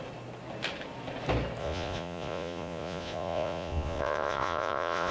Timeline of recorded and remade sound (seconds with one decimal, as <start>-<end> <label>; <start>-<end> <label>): 0.0-1.6 recorded; 1.6-5.1 remade